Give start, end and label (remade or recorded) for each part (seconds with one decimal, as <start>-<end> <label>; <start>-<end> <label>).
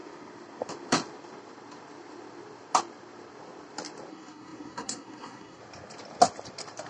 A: 0.0-4.1 recorded; 4.1-5.6 remade; 5.6-6.9 recorded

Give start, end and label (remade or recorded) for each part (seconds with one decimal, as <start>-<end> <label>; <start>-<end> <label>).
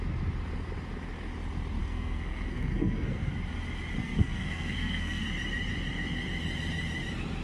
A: 0.0-1.8 recorded; 1.8-3.3 remade; 3.3-4.0 recorded; 4.0-5.2 remade; 5.2-7.4 recorded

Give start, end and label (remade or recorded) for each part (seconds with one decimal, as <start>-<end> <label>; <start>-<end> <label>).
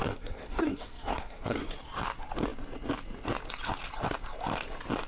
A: 0.0-1.7 remade; 1.7-5.1 recorded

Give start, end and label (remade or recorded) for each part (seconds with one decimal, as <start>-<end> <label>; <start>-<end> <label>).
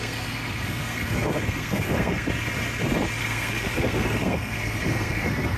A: 0.0-2.3 remade; 2.3-3.2 recorded; 3.2-5.6 remade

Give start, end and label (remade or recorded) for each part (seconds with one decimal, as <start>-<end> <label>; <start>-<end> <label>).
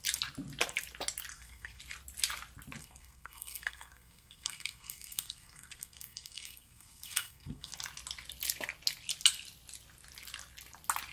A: 0.0-1.3 recorded; 1.3-1.8 remade; 1.8-2.8 recorded; 2.8-7.7 remade; 7.7-11.1 recorded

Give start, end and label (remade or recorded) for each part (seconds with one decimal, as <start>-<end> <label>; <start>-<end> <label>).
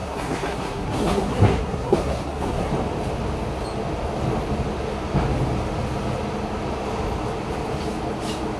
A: 0.0-2.7 remade; 2.7-8.6 recorded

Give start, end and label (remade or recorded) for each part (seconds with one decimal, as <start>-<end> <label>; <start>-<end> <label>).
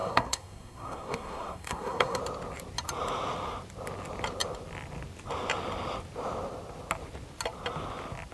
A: 0.0-2.2 remade; 2.2-8.3 recorded